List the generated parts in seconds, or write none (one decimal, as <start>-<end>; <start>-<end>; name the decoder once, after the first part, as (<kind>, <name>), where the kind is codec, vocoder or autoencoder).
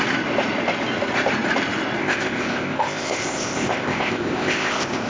2.0-5.1 (codec, ZipCodec)